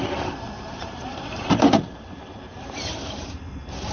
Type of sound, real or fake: fake